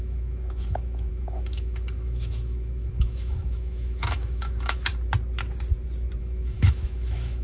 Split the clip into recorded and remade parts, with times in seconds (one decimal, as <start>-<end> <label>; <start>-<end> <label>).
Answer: 0.0-4.9 remade; 4.9-6.2 recorded; 6.2-7.4 remade